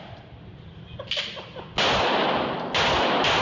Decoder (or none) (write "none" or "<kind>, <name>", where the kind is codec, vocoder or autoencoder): none